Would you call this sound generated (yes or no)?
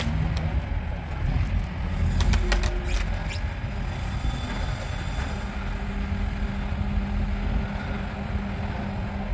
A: no